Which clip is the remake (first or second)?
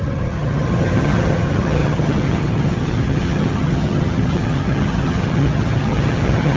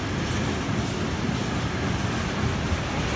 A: first